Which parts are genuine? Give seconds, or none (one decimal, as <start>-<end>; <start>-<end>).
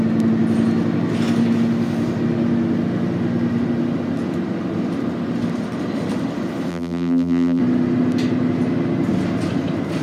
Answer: 0.0-6.7; 7.6-10.0